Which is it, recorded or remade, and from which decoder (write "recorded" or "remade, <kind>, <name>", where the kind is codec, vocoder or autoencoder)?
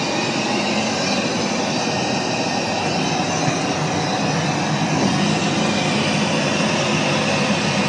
recorded